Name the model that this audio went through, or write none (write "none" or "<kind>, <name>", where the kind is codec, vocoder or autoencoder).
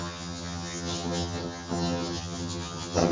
vocoder, HiFi-GAN